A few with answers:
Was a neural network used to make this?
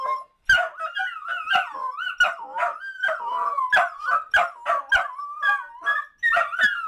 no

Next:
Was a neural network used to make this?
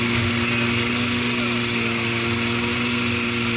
no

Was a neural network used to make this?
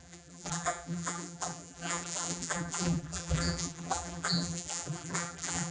yes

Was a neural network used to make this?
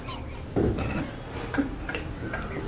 no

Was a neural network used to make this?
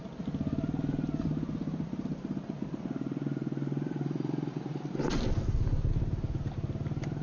no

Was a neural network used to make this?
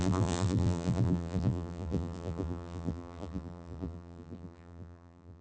yes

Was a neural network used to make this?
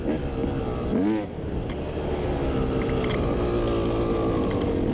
no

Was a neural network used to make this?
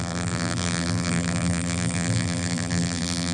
yes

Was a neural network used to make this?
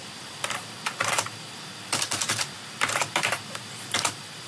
yes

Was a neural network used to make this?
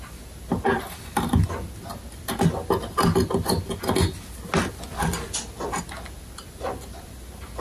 no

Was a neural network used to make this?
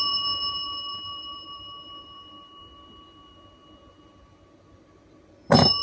yes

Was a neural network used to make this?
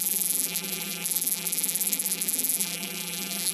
yes